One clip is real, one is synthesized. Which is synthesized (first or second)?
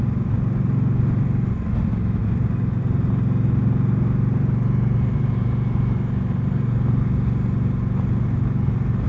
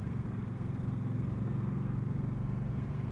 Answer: second